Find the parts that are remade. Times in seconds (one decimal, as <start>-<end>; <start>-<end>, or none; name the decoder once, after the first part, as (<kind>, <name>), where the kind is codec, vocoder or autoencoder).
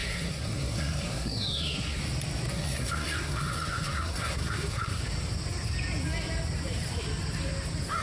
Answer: 0.0-2.0 (codec, SNAC); 2.5-5.0